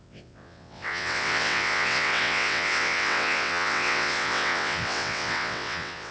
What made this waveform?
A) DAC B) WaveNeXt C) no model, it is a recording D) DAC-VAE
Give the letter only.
B